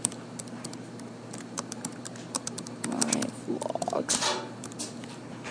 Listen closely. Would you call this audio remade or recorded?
remade